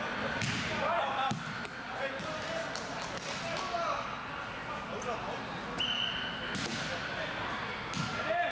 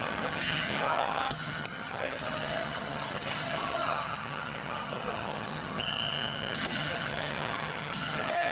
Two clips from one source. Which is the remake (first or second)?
second